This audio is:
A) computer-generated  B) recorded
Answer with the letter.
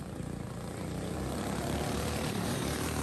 A